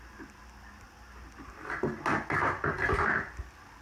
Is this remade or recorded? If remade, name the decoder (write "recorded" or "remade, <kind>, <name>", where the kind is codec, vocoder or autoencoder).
recorded